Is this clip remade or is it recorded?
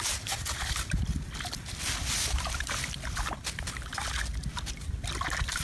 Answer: recorded